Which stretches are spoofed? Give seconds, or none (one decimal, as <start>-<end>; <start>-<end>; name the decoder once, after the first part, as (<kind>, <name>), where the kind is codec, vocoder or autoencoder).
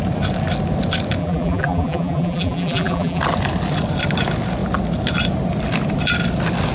1.2-3.2 (vocoder, BigVGAN v2)